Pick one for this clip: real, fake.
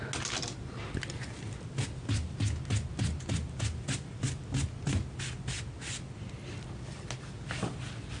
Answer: real